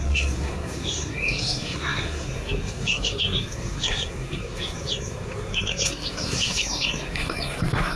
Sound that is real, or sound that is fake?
fake